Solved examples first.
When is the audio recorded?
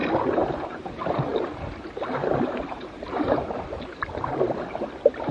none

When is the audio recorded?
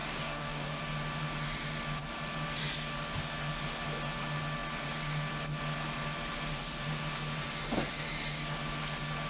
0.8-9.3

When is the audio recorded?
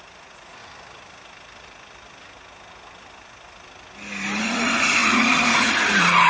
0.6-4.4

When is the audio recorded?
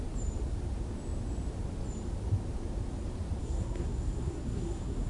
0.0-3.4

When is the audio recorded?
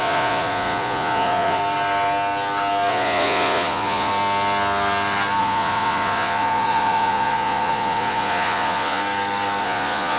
1.6-2.9; 4.1-5.4; 9.0-9.6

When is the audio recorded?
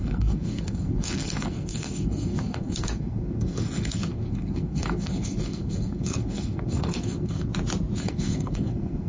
7.5-8.0